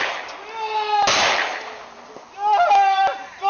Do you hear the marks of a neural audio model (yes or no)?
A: no